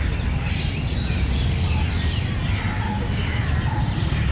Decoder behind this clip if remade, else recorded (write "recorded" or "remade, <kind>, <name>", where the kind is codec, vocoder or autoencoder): recorded